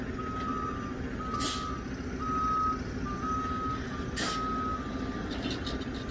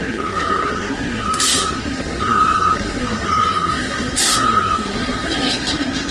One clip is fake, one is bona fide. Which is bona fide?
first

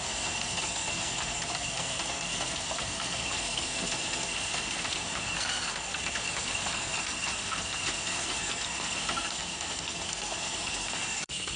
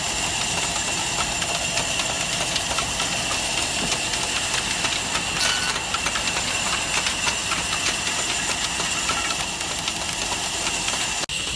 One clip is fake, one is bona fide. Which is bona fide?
second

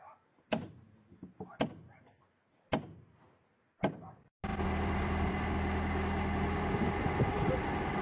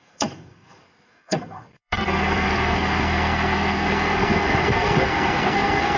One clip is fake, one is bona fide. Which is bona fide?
first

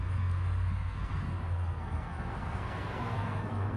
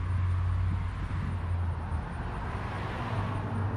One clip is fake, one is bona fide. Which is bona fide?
second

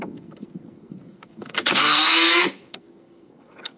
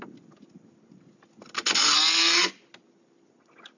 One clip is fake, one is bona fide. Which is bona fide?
second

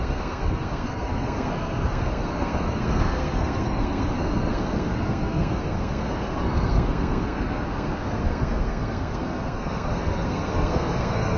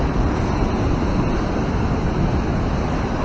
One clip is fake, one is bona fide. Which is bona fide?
second